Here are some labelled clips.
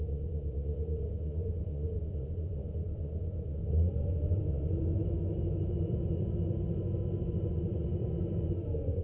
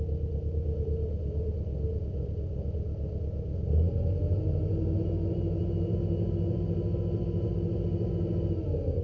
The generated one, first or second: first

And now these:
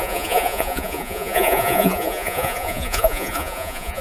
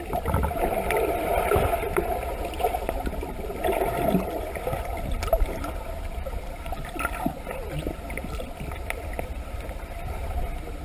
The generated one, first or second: first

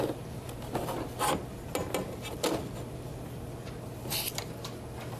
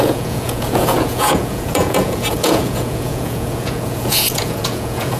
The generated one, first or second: second